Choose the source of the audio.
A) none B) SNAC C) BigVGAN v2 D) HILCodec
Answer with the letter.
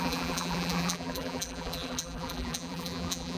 C